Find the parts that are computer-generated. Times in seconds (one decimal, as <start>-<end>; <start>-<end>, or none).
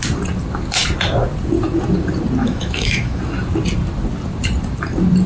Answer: 2.4-3.2